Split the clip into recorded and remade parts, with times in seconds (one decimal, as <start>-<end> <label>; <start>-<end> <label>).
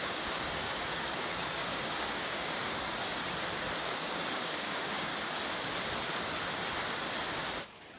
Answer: 0.0-3.2 remade; 3.2-3.8 recorded; 3.8-5.1 remade; 5.1-8.0 recorded